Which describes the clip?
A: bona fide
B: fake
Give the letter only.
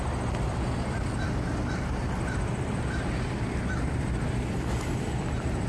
A